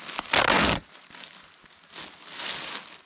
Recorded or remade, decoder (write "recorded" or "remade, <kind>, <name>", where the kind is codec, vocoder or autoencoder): recorded